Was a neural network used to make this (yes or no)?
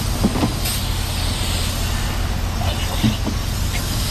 no